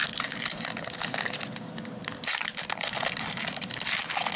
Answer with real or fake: real